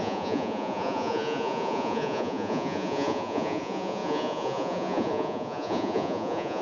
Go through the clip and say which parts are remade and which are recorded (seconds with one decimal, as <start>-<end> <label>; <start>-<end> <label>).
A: 0.0-6.6 remade